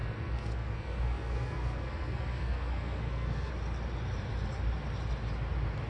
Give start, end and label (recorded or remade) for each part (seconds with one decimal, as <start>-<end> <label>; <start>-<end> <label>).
0.0-3.5 remade; 3.5-5.9 recorded